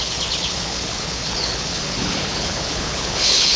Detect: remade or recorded remade